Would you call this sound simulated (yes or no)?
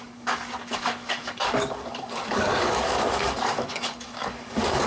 yes